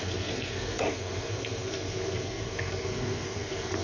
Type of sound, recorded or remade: remade